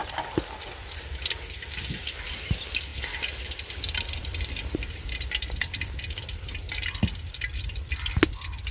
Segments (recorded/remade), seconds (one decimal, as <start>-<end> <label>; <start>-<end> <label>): 0.0-2.0 recorded; 2.0-2.9 remade; 2.9-3.8 recorded; 3.8-8.7 remade